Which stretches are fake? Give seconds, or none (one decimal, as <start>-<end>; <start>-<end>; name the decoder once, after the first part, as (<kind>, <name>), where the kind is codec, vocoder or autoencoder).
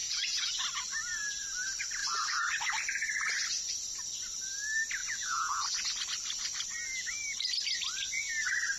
0.0-0.5 (vocoder, Vocos); 5.0-5.6